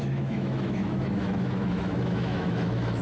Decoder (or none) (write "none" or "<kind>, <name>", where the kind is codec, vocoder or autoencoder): autoencoder, DAC-VAE